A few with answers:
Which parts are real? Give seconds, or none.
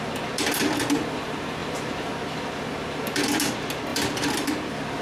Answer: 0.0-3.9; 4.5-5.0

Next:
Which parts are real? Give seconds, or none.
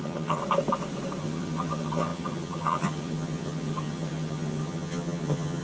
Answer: 0.4-1.2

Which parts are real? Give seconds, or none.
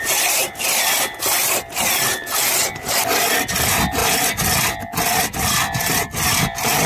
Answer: 0.0-6.9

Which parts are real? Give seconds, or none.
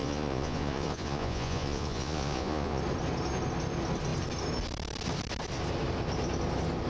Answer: 2.8-6.9